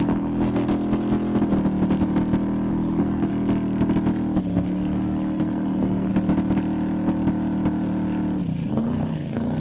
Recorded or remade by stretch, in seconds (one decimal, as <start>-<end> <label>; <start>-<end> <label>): 0.0-0.7 remade; 0.7-2.7 recorded; 2.7-3.3 remade; 3.3-4.4 recorded; 4.4-6.1 remade; 6.1-8.7 recorded; 8.7-9.6 remade